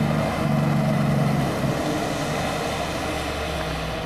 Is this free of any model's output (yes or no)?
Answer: yes